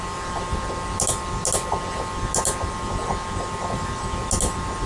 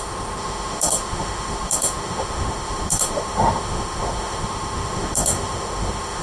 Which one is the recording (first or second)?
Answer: first